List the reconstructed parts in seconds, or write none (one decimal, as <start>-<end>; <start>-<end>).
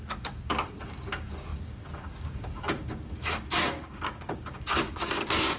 0.0-5.6